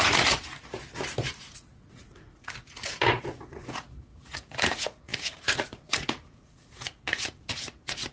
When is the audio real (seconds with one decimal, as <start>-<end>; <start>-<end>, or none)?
0.5-1.6